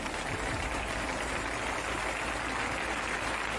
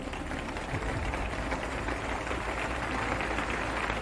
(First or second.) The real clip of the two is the first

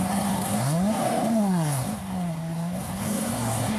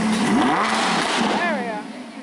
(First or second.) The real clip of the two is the second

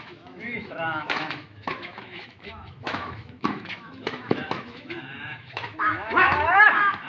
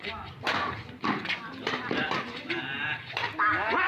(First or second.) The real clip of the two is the second